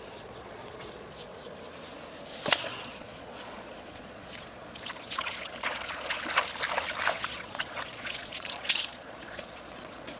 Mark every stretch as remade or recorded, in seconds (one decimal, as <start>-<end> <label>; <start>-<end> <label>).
0.0-1.3 remade; 1.3-2.6 recorded; 2.6-6.2 remade; 6.2-7.1 recorded; 7.1-10.2 remade